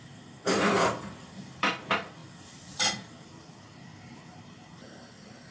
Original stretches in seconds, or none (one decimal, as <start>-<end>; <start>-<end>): none